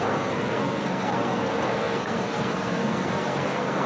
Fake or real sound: fake